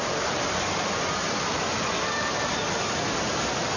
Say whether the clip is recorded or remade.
recorded